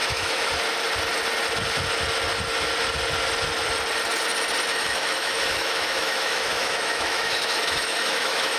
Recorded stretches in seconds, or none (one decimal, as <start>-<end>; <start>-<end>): 0.5-4.7